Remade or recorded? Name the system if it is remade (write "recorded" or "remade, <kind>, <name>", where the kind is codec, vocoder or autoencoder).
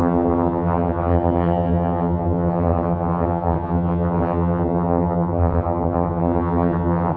remade, vocoder, HiFi-GAN